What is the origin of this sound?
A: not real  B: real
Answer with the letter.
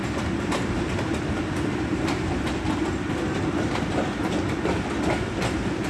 B